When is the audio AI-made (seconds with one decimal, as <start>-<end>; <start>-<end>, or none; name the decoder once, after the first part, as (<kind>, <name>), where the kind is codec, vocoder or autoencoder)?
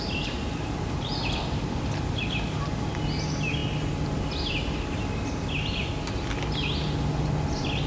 none